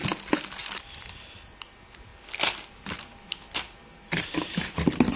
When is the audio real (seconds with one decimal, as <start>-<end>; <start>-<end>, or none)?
0.0-0.8; 2.1-4.1